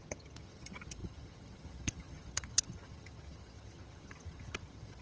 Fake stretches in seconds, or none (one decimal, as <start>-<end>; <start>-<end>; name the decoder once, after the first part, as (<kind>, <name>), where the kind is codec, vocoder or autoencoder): 0.0-5.0 (vocoder, HiFi-GAN)